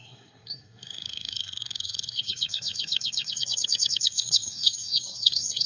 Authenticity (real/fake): fake